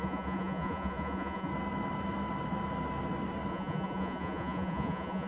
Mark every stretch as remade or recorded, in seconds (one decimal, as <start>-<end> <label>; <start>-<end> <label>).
0.0-1.5 remade; 1.5-3.5 recorded; 3.5-5.3 remade